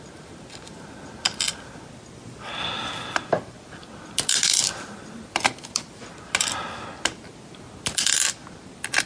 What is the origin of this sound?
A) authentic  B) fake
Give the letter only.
A